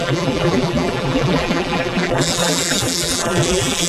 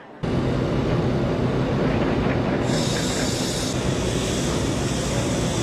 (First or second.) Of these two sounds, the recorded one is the second